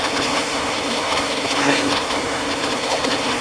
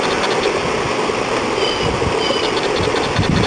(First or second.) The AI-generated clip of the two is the first